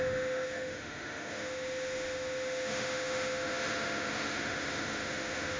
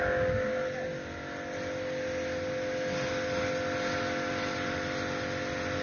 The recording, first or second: second